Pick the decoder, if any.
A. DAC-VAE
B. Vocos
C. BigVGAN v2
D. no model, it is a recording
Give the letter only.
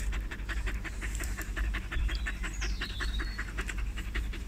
C